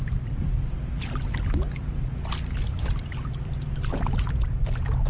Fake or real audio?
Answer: fake